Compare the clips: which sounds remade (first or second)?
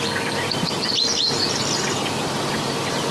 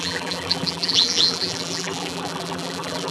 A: second